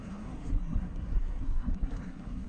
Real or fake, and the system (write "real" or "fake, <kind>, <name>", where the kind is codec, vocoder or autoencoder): fake, codec, SNAC